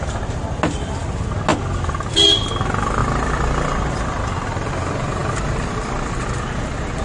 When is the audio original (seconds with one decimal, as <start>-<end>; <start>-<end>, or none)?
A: 0.0-3.0; 4.7-5.2; 5.7-7.0